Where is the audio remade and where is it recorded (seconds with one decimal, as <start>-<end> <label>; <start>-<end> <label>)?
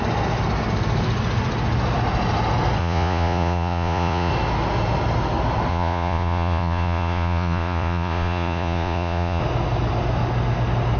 0.0-2.8 recorded; 2.8-4.3 remade; 4.3-5.7 recorded; 5.7-9.4 remade; 9.4-11.0 recorded